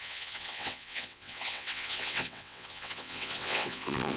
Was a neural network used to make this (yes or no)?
yes